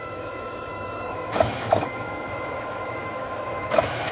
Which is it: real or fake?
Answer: fake